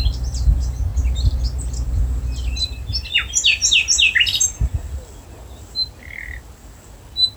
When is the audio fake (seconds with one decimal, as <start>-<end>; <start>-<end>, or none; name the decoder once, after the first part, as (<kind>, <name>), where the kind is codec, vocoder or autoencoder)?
none